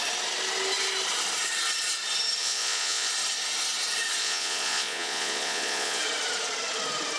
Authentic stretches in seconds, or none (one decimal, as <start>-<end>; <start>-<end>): 0.0-2.4; 3.1-4.2; 6.0-7.2

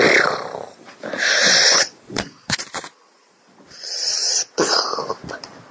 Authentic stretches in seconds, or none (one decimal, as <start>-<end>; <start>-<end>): 0.0-1.4; 4.8-5.7

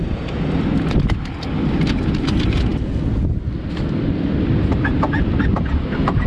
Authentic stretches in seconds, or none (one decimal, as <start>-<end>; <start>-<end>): 0.0-6.3

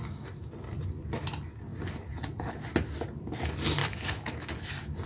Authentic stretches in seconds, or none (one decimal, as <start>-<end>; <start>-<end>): 0.0-3.8; 4.5-5.1

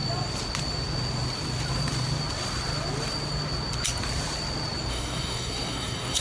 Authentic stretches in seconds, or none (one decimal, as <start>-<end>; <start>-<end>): 0.0-4.9

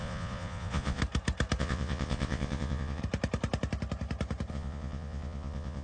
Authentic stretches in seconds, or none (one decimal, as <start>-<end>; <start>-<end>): 1.0-1.6; 3.0-4.5

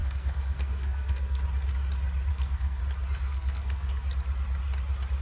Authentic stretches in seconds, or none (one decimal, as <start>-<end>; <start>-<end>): 1.4-2.3; 2.8-3.3; 3.9-5.2